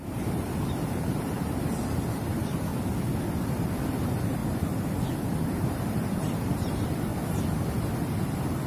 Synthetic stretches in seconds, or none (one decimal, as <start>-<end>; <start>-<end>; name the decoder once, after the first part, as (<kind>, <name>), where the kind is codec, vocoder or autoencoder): 0.0-2.7 (vocoder, BigVGAN v2); 3.8-4.4; 5.7-7.1; 7.7-8.7